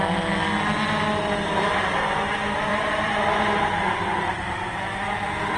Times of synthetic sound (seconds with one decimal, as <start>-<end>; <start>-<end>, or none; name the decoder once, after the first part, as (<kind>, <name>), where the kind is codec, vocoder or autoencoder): 2.7-4.8 (vocoder, BigVGAN v2)